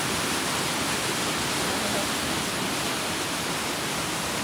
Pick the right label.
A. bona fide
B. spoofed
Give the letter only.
A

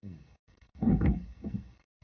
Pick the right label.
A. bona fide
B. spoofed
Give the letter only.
B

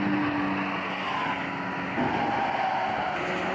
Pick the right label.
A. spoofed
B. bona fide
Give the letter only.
B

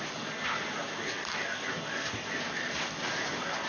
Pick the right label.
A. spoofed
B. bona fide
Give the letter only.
B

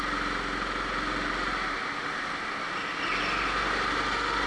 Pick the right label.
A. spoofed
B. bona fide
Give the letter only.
B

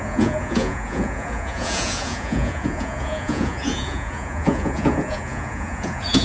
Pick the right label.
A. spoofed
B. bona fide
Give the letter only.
A